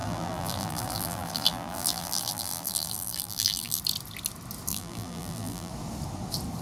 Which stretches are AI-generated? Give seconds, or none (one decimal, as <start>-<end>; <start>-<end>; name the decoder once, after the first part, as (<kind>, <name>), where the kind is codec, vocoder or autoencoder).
0.0-3.8 (vocoder, BigVGAN v2); 4.7-5.7

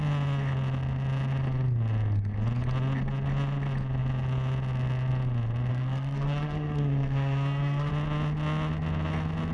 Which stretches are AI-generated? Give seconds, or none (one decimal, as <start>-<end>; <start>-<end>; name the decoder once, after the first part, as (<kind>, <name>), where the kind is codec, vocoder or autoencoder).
5.7-7.9 (codec, SNAC)

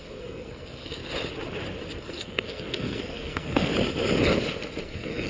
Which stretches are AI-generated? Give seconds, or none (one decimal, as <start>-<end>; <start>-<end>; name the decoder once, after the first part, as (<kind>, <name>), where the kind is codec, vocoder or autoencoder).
0.0-1.0 (codec, SNAC); 2.0-3.7; 4.8-5.3

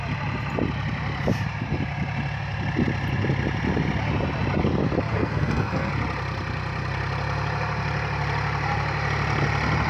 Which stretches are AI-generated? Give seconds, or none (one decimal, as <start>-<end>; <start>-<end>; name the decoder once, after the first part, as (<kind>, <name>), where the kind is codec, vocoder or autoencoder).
5.1-5.9 (codec, SNAC)

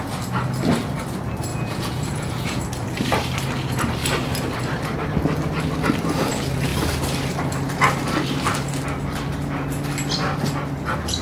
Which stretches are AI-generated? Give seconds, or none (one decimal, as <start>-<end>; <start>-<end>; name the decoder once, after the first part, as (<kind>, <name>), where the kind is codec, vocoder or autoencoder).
1.5-2.6 (vocoder, Vocos)